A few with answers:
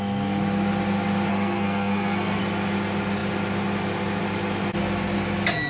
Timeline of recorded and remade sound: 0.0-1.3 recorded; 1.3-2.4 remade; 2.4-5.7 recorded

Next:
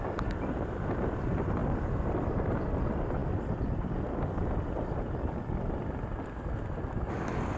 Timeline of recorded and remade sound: 0.0-7.6 recorded

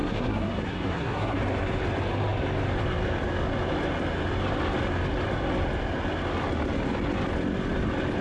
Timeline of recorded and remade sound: 0.0-1.4 remade; 1.4-8.2 recorded

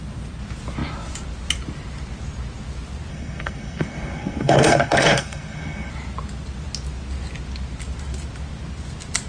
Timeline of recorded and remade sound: 0.0-3.1 recorded; 3.1-5.9 remade; 5.9-9.3 recorded

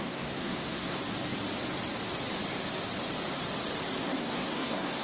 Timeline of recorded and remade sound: 0.0-1.0 remade; 1.0-4.0 recorded; 4.0-5.0 remade

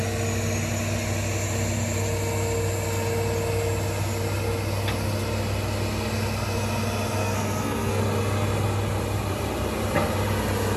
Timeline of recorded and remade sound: 0.0-7.2 recorded; 7.2-8.0 remade; 8.0-10.8 recorded

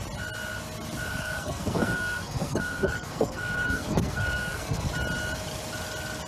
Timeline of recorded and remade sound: 0.0-1.1 recorded; 1.1-4.9 remade; 4.9-6.3 recorded